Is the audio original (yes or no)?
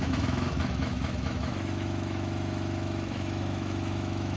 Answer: no